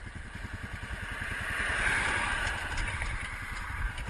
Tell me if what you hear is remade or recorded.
recorded